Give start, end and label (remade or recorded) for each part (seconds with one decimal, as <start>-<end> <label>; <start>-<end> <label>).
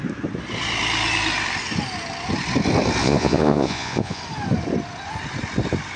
0.0-3.0 recorded; 3.0-4.2 remade; 4.2-6.0 recorded